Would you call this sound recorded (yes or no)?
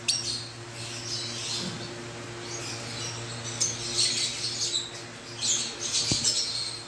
yes